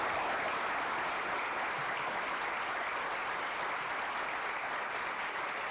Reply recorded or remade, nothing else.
recorded